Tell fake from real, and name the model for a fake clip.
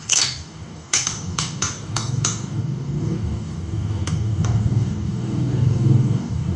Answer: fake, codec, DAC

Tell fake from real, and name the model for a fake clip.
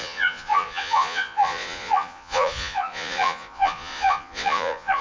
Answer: fake, vocoder, Vocos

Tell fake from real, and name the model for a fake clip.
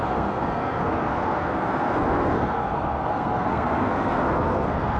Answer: fake, codec, SNAC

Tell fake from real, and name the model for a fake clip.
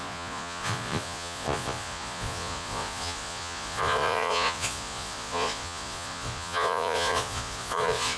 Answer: fake, vocoder, Vocos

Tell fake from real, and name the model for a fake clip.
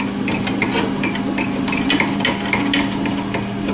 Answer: real